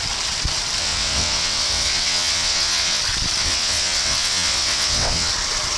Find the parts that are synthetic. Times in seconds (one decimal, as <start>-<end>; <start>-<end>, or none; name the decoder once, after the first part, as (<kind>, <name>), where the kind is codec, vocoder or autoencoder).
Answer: 0.8-3.0 (vocoder, WaveNeXt); 3.4-5.3